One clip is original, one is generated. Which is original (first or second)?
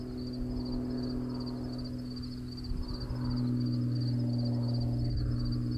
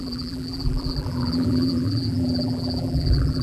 first